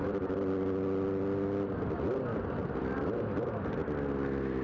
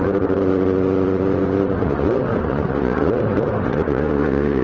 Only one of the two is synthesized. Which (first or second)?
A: second